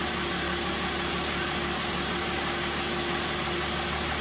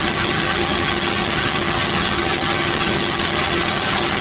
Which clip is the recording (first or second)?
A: first